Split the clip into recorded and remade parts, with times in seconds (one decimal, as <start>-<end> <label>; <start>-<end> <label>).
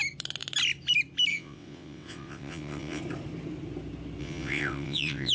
0.0-1.3 recorded; 1.3-3.0 remade; 3.0-4.2 recorded; 4.2-5.3 remade